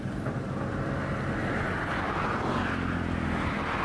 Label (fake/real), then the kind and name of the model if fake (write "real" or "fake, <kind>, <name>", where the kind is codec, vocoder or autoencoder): real